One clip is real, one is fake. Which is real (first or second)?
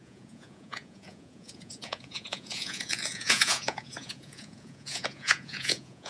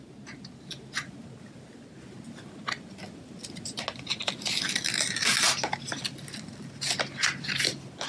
second